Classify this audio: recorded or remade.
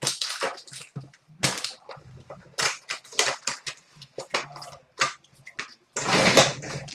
recorded